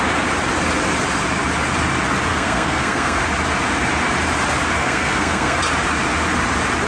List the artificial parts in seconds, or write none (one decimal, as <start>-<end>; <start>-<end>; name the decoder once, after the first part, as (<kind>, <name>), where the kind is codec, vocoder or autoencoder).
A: 2.3-3.2 (codec, SNAC); 4.8-5.6